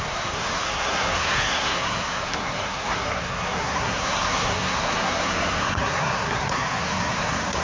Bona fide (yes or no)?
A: no